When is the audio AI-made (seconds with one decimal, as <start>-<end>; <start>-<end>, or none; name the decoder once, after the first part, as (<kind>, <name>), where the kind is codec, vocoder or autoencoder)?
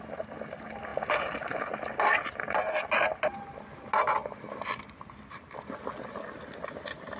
none